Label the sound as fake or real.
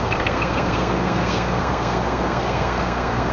fake